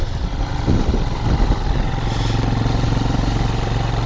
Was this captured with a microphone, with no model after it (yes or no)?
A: yes